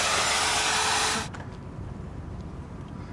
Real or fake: real